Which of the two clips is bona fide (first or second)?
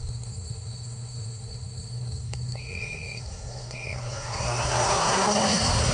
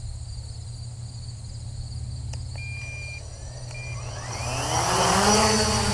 second